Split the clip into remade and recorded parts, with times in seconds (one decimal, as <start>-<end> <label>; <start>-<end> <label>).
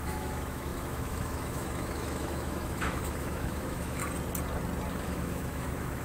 0.0-4.0 remade; 4.0-4.9 recorded; 4.9-6.0 remade